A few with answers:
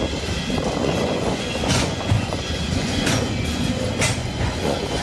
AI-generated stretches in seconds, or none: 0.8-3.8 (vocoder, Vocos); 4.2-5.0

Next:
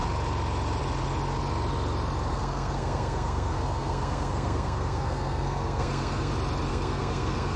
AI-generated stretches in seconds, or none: 2.3-6.3 (codec, SNAC); 6.7-7.6